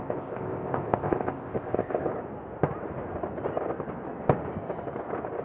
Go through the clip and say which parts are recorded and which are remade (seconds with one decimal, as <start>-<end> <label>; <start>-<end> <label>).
0.0-2.1 remade; 2.1-5.4 recorded